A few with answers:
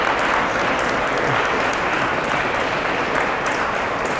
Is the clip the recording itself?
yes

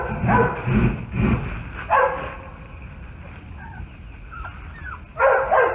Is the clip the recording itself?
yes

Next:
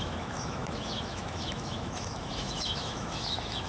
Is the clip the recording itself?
no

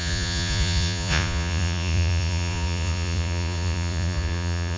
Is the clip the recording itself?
no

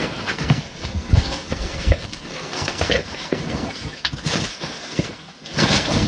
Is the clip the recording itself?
no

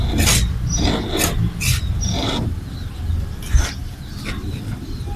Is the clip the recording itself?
yes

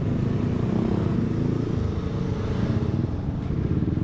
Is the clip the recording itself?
yes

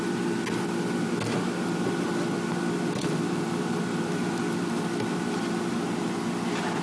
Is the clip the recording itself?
yes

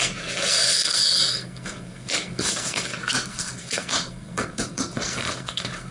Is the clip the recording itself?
no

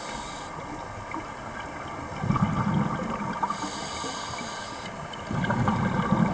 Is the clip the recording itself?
yes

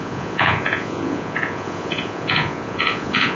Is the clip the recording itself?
no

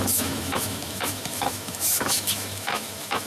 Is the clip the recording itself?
no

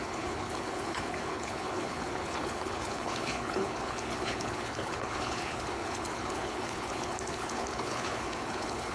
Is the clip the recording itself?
no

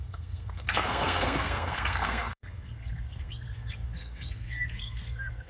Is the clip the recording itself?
no